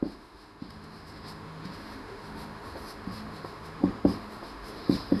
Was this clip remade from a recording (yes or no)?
yes